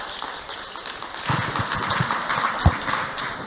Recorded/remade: recorded